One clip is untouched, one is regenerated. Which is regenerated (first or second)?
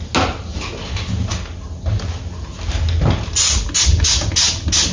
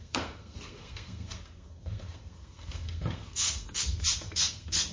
second